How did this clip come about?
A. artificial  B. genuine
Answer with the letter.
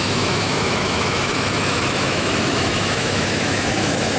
A